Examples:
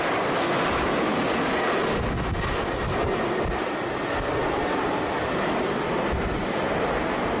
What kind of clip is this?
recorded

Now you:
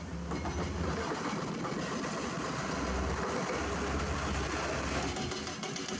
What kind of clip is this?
recorded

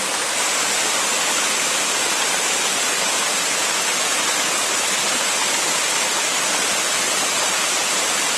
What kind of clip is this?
recorded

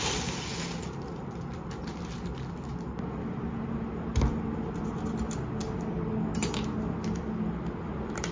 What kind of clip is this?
recorded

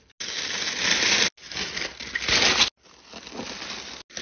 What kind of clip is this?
recorded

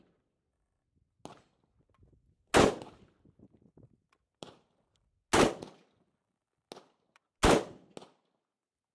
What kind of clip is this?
recorded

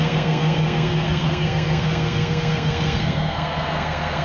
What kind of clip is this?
remade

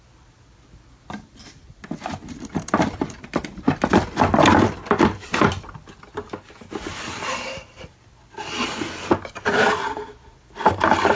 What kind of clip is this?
remade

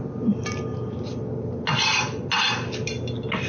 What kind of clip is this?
recorded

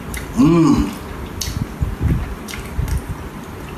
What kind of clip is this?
recorded